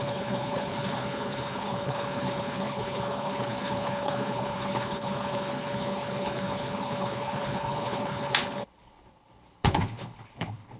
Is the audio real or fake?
fake